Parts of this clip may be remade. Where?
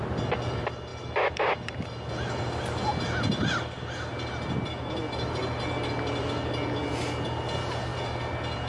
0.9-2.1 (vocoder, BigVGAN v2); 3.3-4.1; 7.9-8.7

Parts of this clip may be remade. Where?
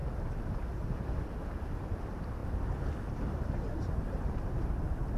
none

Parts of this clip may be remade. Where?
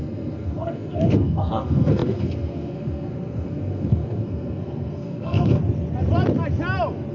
0.0-5.6 (codec, SNAC)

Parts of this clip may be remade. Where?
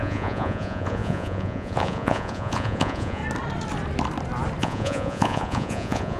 0.0-3.2 (vocoder, Vocos); 4.6-6.2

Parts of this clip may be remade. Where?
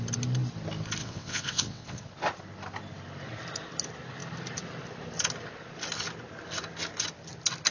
1.0-2.0 (vocoder, WaveNeXt)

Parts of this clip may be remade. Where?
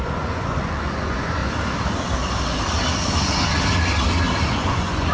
0.0-1.4 (vocoder, Vocos); 4.5-5.1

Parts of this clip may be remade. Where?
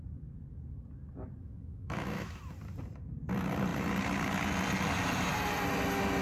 1.4-2.4 (autoencoder, DAC-VAE)